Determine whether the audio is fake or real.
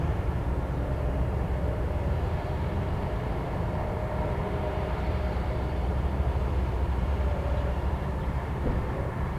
fake